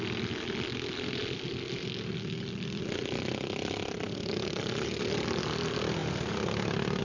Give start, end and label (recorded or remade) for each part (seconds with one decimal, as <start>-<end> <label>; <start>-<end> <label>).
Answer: 0.0-7.0 recorded